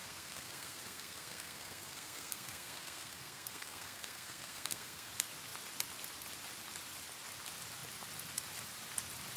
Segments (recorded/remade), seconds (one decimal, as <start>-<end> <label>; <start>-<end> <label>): 0.0-5.1 remade; 5.1-9.4 recorded